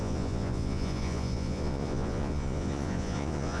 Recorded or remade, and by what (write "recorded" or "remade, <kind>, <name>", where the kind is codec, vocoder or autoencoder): remade, vocoder, Vocos